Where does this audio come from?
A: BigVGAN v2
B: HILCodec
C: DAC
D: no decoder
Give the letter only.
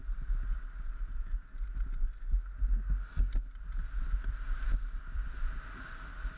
D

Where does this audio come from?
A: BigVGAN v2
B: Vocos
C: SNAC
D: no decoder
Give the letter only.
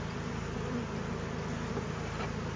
D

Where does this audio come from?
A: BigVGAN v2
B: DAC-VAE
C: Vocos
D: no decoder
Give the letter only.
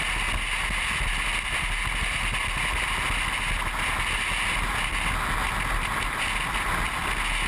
D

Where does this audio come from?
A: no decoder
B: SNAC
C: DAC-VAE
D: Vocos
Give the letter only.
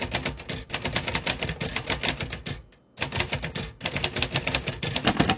A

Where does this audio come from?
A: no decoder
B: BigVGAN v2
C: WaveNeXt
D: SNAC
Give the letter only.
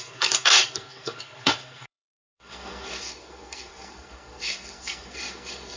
D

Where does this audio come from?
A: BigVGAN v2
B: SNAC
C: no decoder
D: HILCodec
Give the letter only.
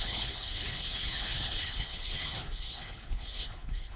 D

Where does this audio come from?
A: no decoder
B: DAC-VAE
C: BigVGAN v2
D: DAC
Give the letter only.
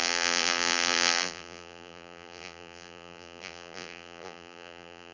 C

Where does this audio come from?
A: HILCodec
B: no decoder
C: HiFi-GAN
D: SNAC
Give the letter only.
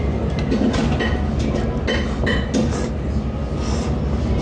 B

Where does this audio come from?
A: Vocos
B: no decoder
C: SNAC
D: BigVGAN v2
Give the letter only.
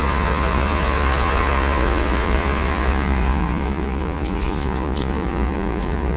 A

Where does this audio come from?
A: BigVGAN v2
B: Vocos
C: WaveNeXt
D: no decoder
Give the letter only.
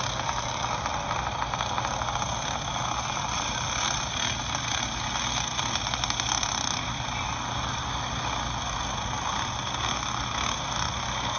D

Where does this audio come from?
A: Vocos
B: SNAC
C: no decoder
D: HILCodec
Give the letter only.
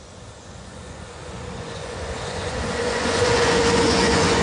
A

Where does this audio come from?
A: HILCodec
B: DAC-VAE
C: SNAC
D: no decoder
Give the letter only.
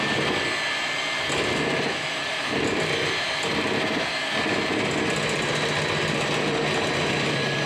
D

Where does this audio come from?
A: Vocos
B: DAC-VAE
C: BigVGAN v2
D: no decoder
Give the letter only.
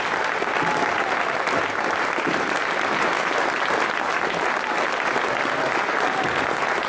D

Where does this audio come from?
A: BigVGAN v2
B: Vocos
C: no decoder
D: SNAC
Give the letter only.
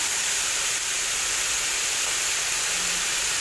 C